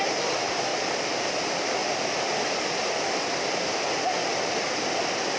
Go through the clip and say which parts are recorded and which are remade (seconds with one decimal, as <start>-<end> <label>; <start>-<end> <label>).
0.0-1.8 remade; 1.8-5.0 recorded; 5.0-5.4 remade